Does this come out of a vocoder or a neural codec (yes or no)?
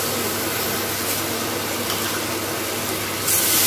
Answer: no